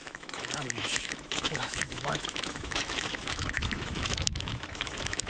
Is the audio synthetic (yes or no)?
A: yes